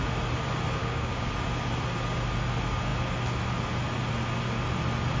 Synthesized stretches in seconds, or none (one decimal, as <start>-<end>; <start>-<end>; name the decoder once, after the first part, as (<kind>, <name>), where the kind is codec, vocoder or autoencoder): 0.8-1.3 (codec, DAC)